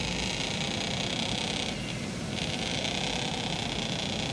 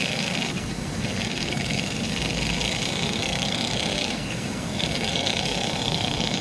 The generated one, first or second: second